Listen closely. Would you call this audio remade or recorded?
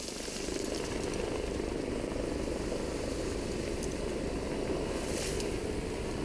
recorded